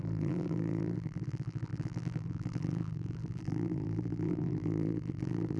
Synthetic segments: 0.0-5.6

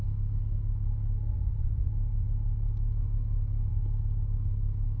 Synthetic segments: 1.3-1.9

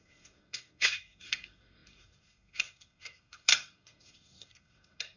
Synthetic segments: 0.0-5.2

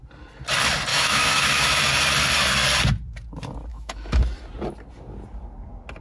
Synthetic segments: 0.9-1.8; 3.7-4.2